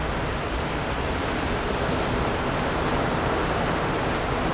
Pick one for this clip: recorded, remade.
recorded